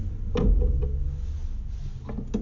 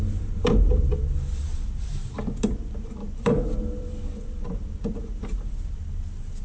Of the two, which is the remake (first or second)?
second